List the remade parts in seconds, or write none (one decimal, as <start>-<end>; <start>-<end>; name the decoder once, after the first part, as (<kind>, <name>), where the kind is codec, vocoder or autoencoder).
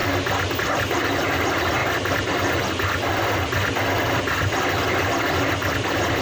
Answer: none